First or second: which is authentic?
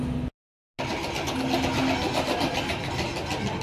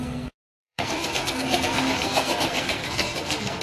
first